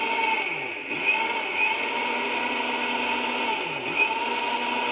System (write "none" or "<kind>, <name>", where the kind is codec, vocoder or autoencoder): none